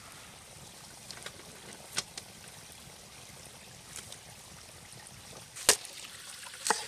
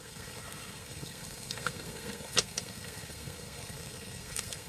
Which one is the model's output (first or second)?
second